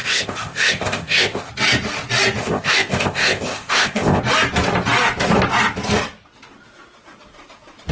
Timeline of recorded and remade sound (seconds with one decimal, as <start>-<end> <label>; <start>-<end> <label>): 0.0-1.5 remade; 1.5-2.4 recorded; 2.4-4.2 remade; 4.2-7.9 recorded